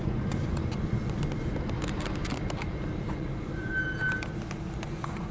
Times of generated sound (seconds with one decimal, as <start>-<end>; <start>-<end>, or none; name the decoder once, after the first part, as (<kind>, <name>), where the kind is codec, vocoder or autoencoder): 0.0-1.0 (vocoder, Vocos); 3.0-3.7; 4.8-5.3